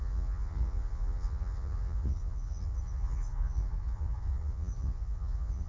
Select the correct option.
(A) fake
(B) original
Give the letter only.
A